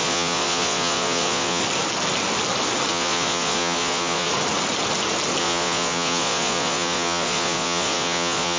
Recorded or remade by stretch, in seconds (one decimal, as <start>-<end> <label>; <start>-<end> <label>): 0.0-1.6 remade; 1.6-2.9 recorded; 2.9-4.3 remade; 4.3-5.4 recorded; 5.4-8.6 remade